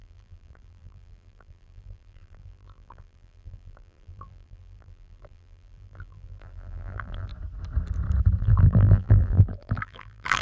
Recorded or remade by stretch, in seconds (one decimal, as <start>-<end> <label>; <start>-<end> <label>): 0.0-7.3 remade; 7.3-8.4 recorded; 8.4-10.4 remade